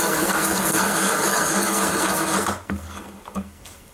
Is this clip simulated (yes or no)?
yes